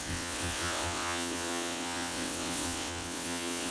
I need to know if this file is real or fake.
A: fake